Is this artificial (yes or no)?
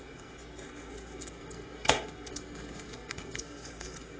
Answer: yes